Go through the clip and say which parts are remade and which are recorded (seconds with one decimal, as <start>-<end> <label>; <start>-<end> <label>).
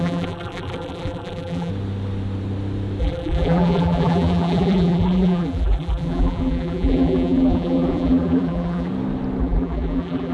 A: 0.0-1.7 remade; 1.7-3.0 recorded; 3.0-8.9 remade; 8.9-9.4 recorded; 9.4-10.3 remade